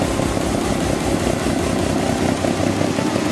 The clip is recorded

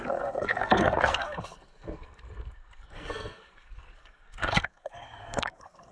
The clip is remade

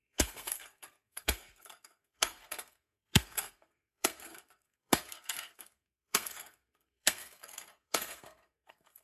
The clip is remade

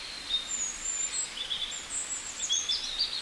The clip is recorded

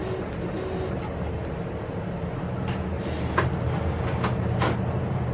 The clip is recorded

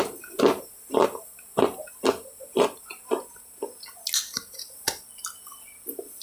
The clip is recorded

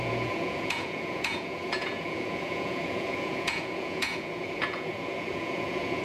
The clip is remade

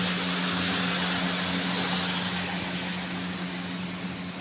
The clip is recorded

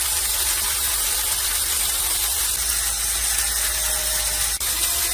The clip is recorded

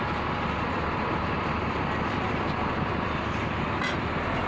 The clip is recorded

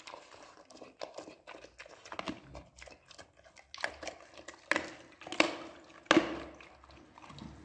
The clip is recorded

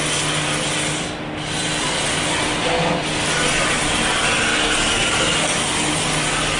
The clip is recorded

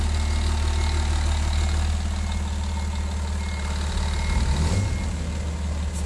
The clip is recorded